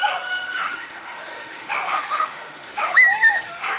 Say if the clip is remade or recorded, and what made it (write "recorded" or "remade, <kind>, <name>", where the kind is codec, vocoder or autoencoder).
remade, autoencoder, DAC-VAE